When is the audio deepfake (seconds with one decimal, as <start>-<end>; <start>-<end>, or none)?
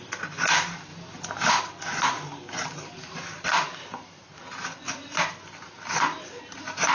none